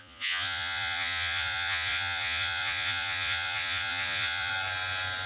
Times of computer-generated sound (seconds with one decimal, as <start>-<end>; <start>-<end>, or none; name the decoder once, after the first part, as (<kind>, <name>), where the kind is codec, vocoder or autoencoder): 0.0-4.5 (vocoder, Vocos)